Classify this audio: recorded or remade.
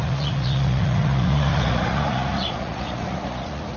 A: remade